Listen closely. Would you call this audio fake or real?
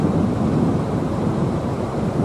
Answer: fake